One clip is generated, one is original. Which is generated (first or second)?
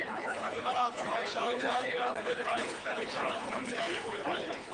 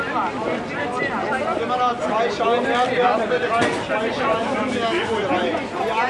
first